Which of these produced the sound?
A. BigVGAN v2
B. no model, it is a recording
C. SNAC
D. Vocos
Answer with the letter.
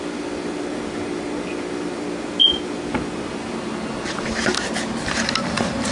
B